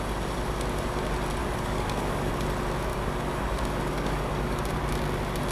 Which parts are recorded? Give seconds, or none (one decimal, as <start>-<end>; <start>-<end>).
0.0-1.4; 2.3-2.9; 4.6-5.5